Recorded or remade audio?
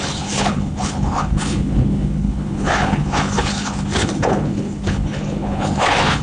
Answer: remade